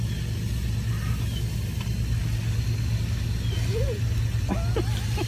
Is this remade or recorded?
recorded